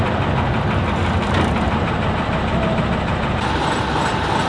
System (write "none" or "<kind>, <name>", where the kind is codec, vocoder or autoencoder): none